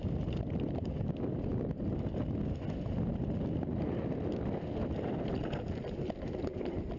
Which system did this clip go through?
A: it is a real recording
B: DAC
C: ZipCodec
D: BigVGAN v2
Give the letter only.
A